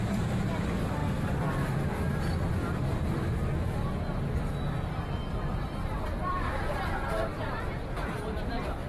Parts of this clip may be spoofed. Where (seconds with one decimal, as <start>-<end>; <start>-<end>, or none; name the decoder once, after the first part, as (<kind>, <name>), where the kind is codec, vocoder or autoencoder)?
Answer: 0.0-1.0 (vocoder, BigVGAN v2); 2.1-4.5; 5.5-7.3; 8.4-8.9